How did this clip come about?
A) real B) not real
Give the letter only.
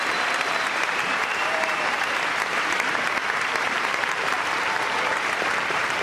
B